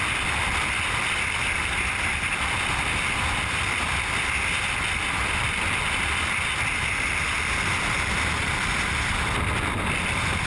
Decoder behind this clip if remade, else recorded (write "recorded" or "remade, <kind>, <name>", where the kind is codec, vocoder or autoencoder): recorded